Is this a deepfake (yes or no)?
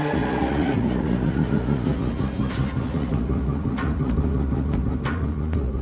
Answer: yes